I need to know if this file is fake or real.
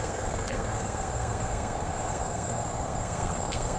fake